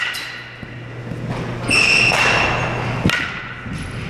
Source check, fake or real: real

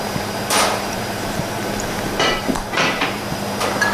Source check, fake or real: fake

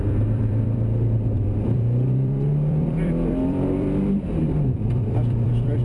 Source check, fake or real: fake